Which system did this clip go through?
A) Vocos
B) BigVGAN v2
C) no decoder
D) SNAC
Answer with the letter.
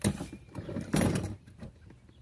C